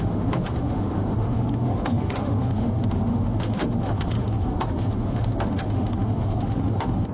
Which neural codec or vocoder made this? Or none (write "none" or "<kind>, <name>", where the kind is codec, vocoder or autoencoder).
autoencoder, DAC-VAE